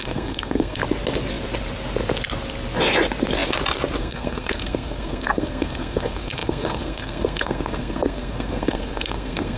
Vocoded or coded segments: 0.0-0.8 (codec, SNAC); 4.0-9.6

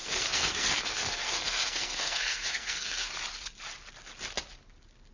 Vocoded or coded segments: 0.0-3.1 (codec, SNAC)

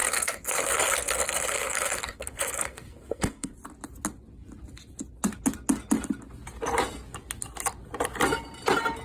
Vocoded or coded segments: 0.0-3.5 (codec, SNAC)

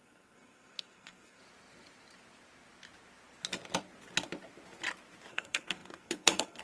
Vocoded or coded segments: 0.0-1.4 (codec, SNAC); 5.3-6.6

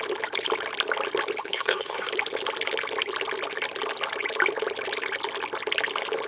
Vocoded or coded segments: 1.4-2.1 (codec, SNAC)

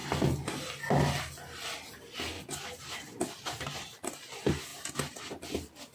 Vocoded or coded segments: none